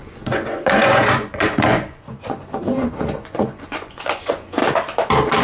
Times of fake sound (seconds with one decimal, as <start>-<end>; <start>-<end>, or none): 0.0-4.6